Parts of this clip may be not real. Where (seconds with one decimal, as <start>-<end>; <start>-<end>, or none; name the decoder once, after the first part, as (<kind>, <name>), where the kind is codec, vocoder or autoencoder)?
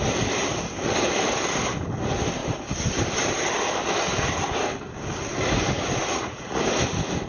6.0-6.6 (vocoder, Vocos)